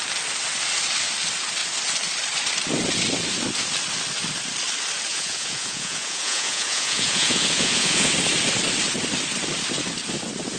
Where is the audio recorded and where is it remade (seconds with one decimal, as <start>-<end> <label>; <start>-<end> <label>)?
0.0-5.1 recorded; 5.1-8.1 remade; 8.1-10.6 recorded